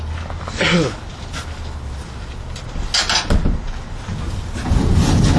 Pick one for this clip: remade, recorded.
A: recorded